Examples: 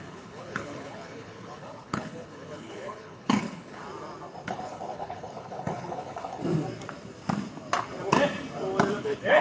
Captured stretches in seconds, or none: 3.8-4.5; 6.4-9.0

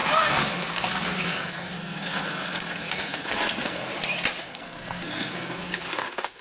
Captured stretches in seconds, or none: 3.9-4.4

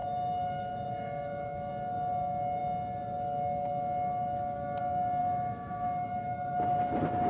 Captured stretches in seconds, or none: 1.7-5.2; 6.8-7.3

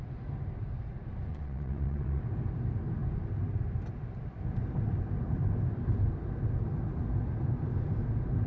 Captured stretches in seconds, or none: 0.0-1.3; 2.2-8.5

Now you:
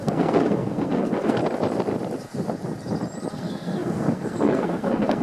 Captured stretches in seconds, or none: 1.4-3.3

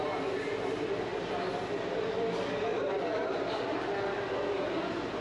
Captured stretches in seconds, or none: 0.0-5.2

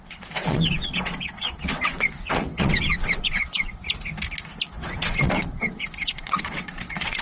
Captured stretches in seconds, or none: 3.8-4.7